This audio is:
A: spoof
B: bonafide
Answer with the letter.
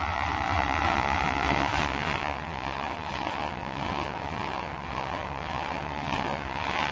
A